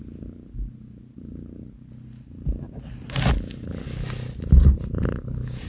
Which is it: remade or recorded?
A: recorded